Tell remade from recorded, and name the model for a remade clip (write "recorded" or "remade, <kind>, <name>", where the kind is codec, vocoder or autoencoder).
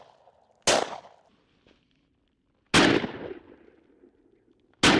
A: recorded